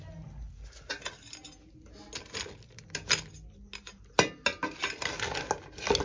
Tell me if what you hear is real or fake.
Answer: real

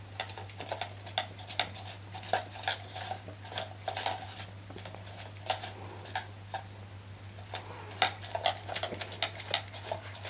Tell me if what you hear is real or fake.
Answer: real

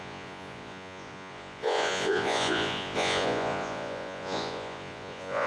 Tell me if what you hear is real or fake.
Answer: fake